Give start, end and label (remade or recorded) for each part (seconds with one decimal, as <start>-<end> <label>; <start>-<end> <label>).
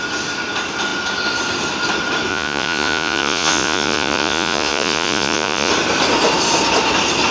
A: 0.0-2.3 recorded; 2.3-5.7 remade; 5.7-7.3 recorded